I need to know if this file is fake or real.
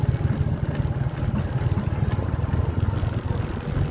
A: real